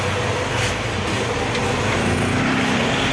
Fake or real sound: real